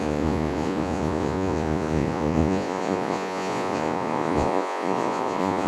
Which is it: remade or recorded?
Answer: remade